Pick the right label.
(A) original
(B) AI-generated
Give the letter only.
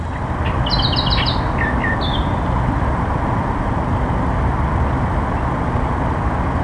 A